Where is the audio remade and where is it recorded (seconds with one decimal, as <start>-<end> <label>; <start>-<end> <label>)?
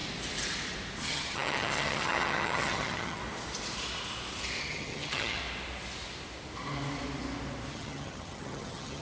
0.0-1.0 recorded; 1.0-3.2 remade; 3.2-4.6 recorded; 4.6-5.4 remade; 5.4-7.7 recorded; 7.7-9.0 remade